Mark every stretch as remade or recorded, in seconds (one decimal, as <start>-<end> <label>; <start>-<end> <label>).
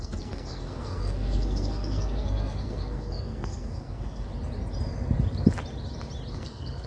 0.0-4.3 remade; 4.3-6.3 recorded; 6.3-6.9 remade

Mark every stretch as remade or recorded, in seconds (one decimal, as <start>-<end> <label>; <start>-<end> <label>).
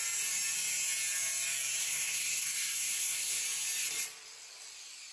0.0-1.8 recorded; 1.8-3.4 remade; 3.4-5.1 recorded